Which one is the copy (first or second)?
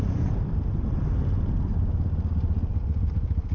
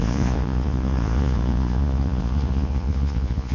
second